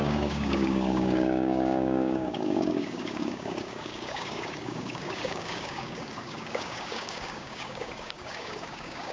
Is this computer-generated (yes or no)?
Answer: yes